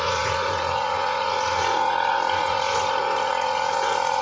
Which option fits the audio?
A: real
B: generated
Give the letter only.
B